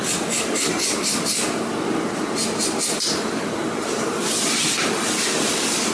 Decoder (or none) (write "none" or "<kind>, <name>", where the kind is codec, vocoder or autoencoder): none